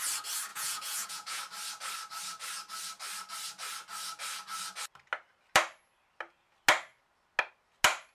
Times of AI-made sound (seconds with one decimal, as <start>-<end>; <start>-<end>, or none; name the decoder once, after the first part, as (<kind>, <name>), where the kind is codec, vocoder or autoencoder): 0.5-1.4 (vocoder, Vocos)